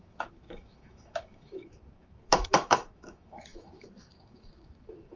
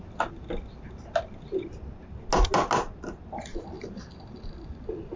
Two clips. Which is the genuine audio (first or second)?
second